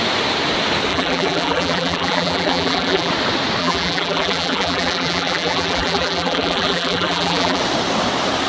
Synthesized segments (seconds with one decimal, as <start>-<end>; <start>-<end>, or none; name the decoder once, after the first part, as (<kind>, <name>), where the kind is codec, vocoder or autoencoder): 0.9-3.1 (vocoder, BigVGAN v2); 3.6-7.6

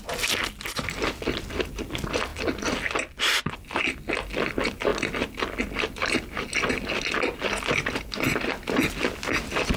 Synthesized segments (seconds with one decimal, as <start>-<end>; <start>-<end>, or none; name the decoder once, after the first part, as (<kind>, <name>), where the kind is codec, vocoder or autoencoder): none

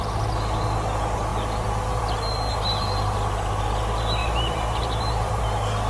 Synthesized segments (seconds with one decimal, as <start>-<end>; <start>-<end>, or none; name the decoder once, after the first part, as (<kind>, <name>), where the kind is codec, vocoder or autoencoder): 4.2-5.4 (vocoder, BigVGAN v2)

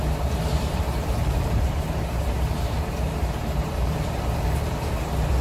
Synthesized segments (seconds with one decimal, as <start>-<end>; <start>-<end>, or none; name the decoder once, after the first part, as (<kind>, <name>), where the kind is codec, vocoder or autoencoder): 0.0-5.4 (vocoder, BigVGAN v2)

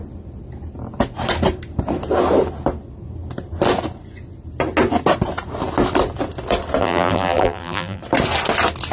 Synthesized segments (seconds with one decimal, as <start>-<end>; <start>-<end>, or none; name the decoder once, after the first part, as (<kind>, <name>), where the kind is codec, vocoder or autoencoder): 6.8-8.0 (vocoder, BigVGAN v2)

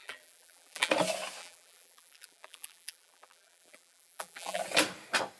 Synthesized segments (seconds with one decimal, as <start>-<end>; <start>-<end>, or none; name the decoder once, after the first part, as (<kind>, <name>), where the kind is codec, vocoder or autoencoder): 0.0-0.9 (vocoder, BigVGAN v2); 1.4-4.6